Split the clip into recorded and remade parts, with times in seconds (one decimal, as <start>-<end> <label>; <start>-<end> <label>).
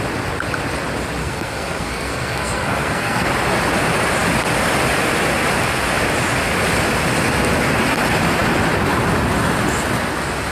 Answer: 0.0-1.2 recorded; 1.2-3.3 remade; 3.3-10.5 recorded